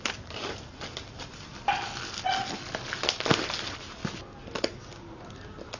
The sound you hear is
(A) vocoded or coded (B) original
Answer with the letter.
B